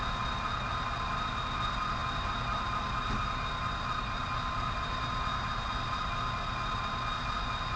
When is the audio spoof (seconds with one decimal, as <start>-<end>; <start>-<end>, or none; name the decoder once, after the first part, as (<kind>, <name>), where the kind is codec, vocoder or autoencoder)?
none